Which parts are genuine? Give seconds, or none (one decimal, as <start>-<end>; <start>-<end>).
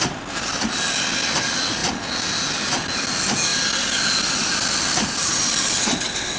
0.0-6.4